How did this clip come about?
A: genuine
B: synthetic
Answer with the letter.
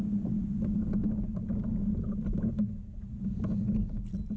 A